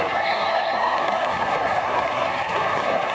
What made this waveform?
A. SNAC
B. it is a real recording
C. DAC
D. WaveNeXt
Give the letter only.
A